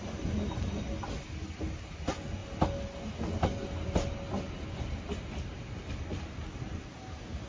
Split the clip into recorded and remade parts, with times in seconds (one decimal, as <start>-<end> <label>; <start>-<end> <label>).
0.0-7.5 recorded